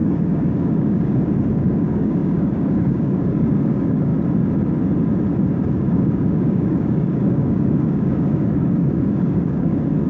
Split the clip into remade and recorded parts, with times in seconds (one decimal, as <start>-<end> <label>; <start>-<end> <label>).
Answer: 0.0-4.1 remade; 4.1-5.7 recorded; 5.7-10.1 remade